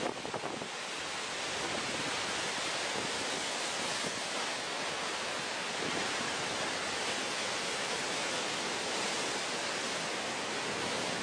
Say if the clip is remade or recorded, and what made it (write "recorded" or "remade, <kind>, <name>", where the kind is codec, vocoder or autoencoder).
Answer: recorded